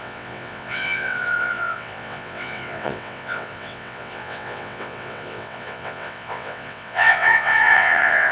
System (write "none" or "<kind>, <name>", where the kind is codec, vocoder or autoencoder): vocoder, WaveNeXt